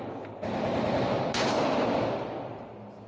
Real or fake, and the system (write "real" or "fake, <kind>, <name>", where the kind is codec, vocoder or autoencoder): real